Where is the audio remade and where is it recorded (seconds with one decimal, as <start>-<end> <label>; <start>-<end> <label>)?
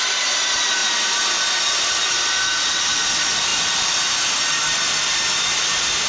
0.0-6.1 recorded